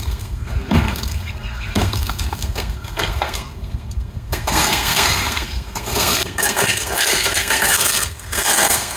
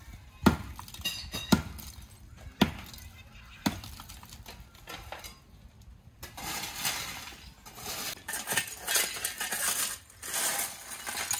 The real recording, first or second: second